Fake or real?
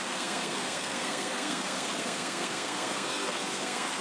fake